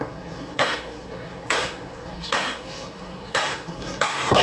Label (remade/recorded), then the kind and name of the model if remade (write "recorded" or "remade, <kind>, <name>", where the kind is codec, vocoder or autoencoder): remade, codec, SNAC